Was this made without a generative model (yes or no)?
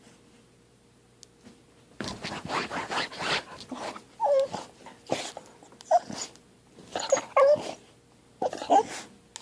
yes